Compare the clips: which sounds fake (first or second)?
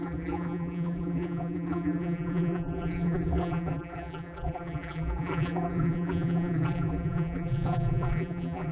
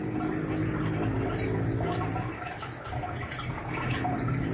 first